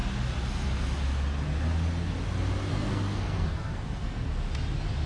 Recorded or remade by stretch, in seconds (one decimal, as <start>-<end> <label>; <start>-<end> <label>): 0.0-2.7 recorded; 2.7-4.3 remade; 4.3-5.1 recorded